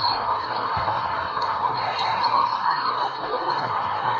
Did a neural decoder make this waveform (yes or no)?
yes